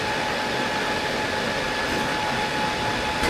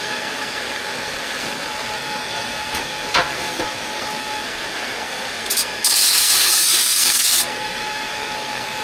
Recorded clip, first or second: first